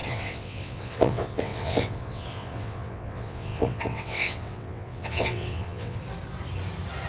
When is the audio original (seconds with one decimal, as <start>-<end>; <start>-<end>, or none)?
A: 6.0-7.1